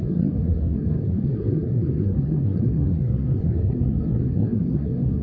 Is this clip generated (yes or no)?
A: yes